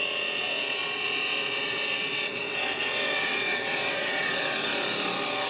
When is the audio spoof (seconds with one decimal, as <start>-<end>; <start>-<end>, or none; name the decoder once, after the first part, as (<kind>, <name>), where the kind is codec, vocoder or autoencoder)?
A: 0.0-4.7 (vocoder, WaveNeXt)